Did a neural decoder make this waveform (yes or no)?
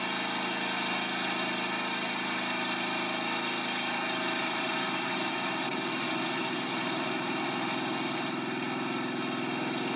no